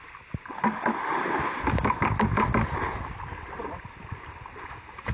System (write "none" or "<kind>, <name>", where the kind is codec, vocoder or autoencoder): none